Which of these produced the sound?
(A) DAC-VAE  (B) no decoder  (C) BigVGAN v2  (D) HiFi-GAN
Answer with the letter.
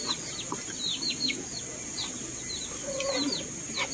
B